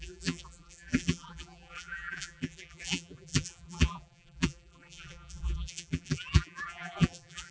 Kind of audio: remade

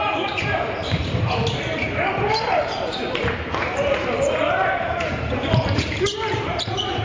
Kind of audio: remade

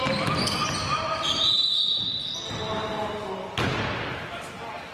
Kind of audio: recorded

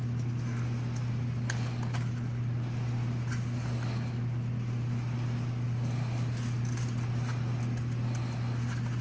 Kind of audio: recorded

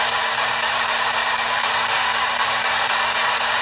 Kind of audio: remade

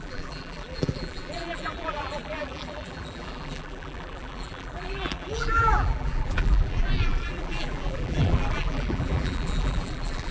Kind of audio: remade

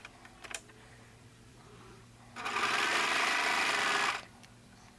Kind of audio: remade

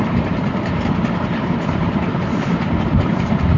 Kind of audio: remade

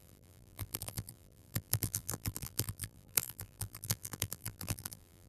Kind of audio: remade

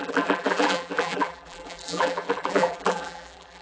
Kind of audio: remade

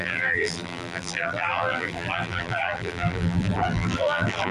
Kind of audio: remade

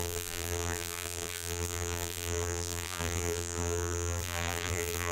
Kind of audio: remade